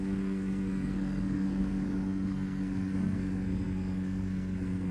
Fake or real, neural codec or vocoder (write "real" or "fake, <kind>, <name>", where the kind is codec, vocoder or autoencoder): fake, codec, SNAC